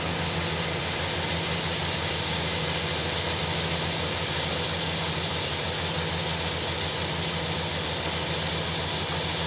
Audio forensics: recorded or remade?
recorded